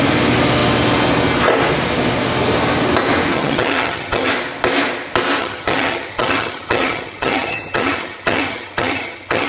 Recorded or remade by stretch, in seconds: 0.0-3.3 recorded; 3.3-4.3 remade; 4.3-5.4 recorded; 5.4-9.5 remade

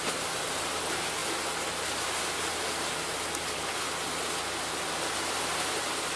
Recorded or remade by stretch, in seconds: 0.0-6.2 recorded

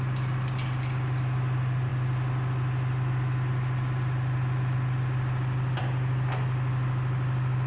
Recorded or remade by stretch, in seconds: 0.0-7.7 recorded

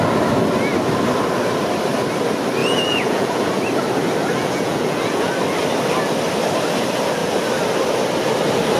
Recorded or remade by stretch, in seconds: 0.0-2.6 recorded; 2.6-3.5 remade; 3.5-4.3 recorded; 4.3-5.3 remade; 5.3-8.8 recorded

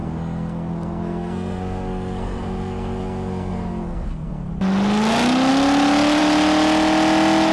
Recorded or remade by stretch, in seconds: 0.0-4.5 remade; 4.5-7.5 recorded

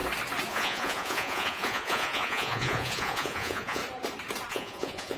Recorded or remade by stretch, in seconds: 0.0-0.5 recorded; 0.5-3.8 remade; 3.8-4.5 recorded; 4.5-5.2 remade